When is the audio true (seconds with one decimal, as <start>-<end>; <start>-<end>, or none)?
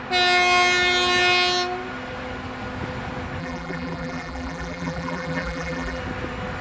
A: 0.0-3.4; 6.0-6.6